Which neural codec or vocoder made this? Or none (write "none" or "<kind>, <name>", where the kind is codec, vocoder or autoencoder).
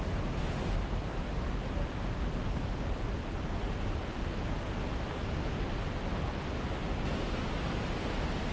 none